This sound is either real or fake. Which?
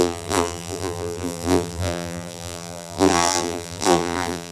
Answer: fake